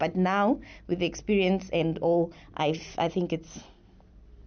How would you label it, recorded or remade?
recorded